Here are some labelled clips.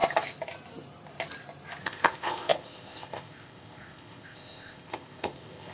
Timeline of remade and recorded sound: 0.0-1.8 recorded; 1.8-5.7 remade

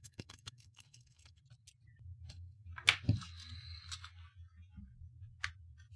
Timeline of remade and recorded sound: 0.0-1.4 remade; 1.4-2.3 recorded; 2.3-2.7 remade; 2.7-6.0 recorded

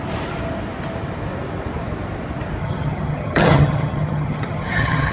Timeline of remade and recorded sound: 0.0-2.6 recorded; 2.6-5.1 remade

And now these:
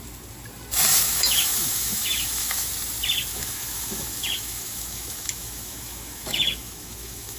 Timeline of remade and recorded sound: 0.0-0.9 recorded; 0.9-2.7 remade; 2.7-3.3 recorded; 3.3-7.4 remade